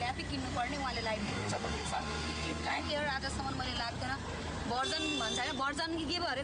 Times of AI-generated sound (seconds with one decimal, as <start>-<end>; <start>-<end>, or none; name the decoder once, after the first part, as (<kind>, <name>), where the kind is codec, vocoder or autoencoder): 1.2-2.9 (codec, SNAC)